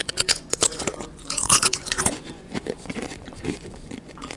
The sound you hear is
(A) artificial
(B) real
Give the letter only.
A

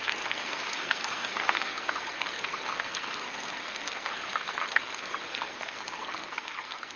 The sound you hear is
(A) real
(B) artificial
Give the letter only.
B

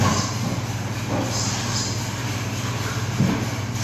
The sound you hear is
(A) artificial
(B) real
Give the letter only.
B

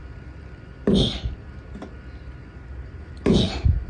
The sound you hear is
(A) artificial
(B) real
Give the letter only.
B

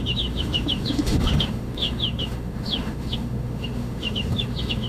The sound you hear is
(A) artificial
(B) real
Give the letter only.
A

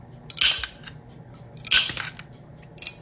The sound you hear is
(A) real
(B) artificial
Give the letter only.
A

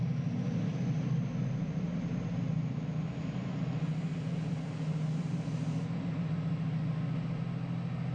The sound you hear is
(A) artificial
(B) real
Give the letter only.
B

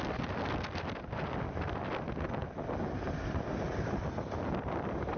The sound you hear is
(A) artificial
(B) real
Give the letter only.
B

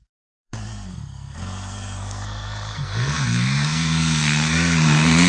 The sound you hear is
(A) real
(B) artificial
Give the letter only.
B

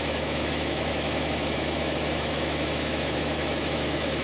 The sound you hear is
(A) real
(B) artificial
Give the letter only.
B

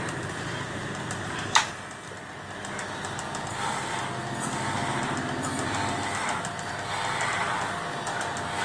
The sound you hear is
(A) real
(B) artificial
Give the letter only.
A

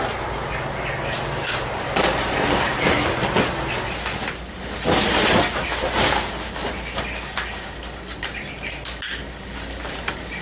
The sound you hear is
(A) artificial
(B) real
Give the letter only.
B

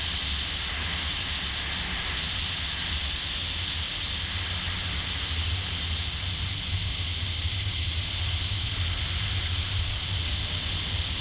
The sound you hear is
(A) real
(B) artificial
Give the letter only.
A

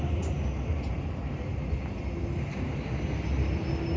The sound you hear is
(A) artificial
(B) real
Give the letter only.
B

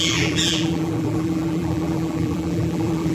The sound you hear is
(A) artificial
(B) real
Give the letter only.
A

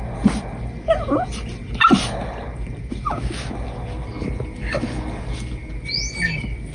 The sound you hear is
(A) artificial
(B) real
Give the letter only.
B